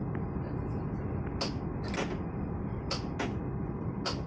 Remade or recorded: recorded